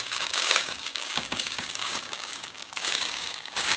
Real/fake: fake